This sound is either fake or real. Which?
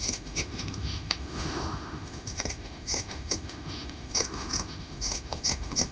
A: fake